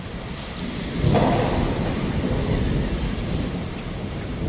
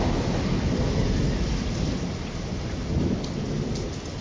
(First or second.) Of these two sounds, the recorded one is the second